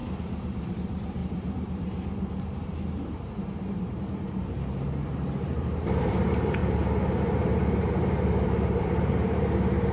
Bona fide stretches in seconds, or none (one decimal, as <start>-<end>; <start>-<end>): 6.6-7.2